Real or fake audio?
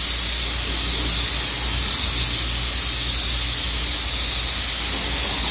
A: real